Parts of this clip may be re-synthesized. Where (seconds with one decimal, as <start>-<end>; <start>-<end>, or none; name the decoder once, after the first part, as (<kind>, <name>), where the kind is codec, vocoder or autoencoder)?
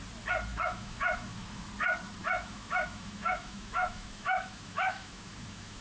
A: 0.5-1.7 (autoencoder, DAC-VAE); 2.2-5.8